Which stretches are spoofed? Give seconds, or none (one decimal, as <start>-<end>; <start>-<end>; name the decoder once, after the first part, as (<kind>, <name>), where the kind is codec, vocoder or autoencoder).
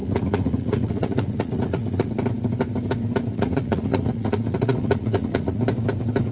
0.0-2.1 (vocoder, Vocos); 3.3-5.6